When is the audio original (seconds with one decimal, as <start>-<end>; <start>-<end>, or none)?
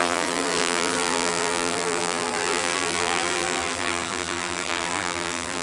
none